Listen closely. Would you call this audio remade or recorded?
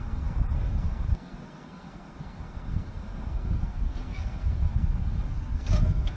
remade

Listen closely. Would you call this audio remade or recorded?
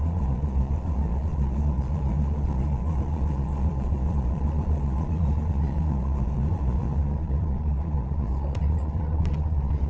remade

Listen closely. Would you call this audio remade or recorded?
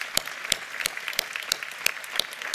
recorded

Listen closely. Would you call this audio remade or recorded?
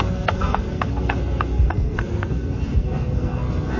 remade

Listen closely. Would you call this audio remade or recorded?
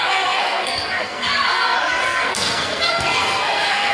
remade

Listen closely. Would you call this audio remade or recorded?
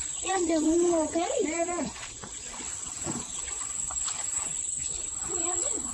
remade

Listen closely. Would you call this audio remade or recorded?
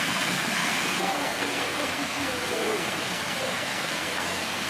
remade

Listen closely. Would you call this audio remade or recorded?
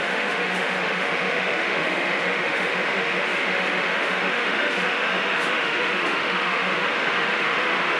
remade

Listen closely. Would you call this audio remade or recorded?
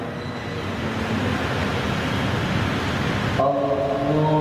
recorded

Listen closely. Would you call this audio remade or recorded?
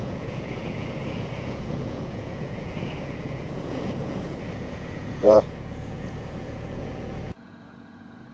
remade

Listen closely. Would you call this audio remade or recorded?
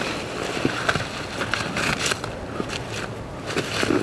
recorded